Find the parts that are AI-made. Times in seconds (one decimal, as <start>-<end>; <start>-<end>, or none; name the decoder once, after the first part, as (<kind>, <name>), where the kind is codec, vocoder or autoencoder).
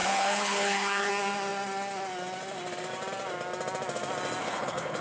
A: 0.0-1.1 (codec, HILCodec); 4.4-5.0